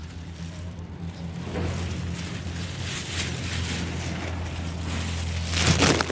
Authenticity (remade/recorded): recorded